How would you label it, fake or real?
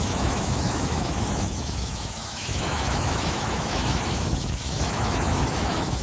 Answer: fake